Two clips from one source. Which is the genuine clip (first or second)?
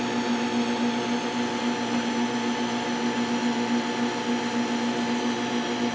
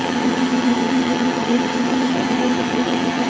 first